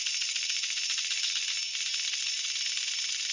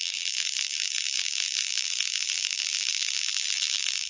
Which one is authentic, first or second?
first